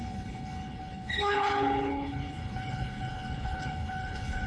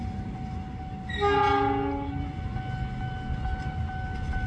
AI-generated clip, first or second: first